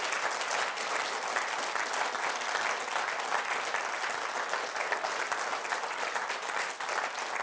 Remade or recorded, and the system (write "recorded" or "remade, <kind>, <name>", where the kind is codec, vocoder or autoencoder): recorded